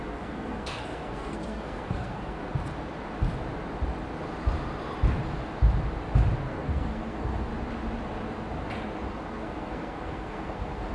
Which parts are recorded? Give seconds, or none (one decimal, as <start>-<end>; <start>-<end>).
2.4-6.4; 7.5-9.1